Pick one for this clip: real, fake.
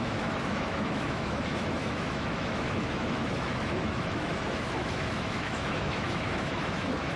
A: fake